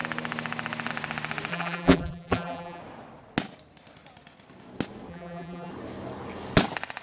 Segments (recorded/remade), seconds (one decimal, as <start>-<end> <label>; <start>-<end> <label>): 0.0-1.5 recorded; 1.5-2.8 remade; 2.8-5.1 recorded; 5.1-5.7 remade; 5.7-7.0 recorded